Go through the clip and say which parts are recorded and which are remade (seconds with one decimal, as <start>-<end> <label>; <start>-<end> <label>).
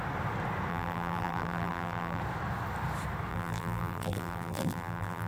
0.0-0.7 recorded; 0.7-2.2 remade; 2.2-3.3 recorded; 3.3-5.3 remade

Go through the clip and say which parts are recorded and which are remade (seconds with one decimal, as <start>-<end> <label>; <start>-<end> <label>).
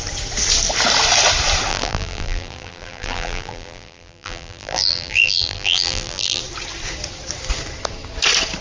0.0-1.7 recorded; 1.7-6.4 remade; 6.4-8.6 recorded